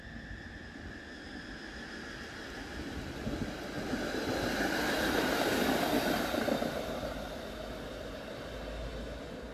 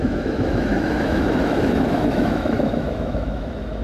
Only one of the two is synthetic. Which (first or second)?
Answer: second